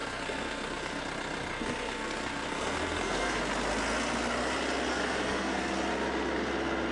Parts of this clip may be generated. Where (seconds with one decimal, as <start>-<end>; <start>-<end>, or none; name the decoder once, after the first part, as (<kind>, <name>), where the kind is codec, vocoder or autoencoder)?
0.0-1.0 (codec, SNAC); 1.5-3.4; 4.9-5.7